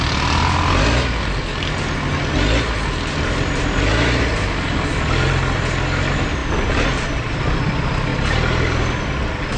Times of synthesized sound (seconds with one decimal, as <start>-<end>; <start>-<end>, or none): none